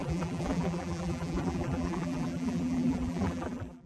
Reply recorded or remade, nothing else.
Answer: remade